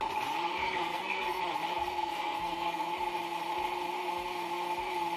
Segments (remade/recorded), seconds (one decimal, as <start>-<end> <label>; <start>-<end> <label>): 0.0-0.6 recorded; 0.6-1.4 remade; 1.4-1.8 recorded; 1.8-2.9 remade; 2.9-5.2 recorded